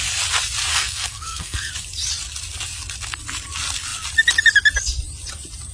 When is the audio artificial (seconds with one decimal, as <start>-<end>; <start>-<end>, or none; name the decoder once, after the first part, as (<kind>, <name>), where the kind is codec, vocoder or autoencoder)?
0.7-1.7 (codec, SNAC)